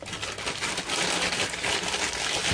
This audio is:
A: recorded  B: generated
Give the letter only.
A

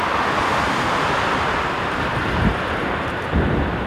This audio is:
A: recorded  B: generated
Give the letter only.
A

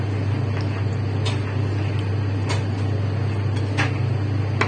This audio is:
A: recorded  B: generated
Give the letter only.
A